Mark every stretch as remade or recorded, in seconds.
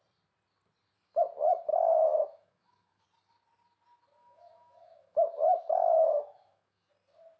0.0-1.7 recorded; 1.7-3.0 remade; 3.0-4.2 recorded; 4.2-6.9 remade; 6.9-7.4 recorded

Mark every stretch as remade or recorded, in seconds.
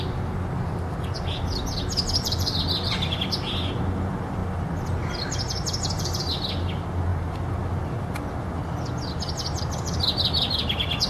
0.0-11.1 recorded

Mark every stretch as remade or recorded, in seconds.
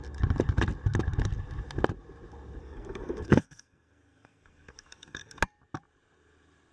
0.0-2.6 recorded; 2.6-5.4 remade; 5.4-6.7 recorded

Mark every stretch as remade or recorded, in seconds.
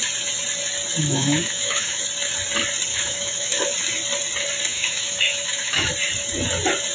0.0-1.0 recorded; 1.0-2.0 remade; 2.0-2.9 recorded; 2.9-3.6 remade; 3.6-4.7 recorded; 4.7-5.9 remade; 5.9-6.9 recorded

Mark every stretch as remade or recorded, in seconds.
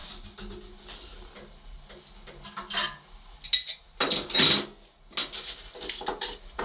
0.0-6.6 recorded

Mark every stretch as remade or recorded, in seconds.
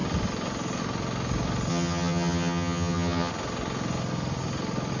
0.0-1.7 recorded; 1.7-3.3 remade; 3.3-5.0 recorded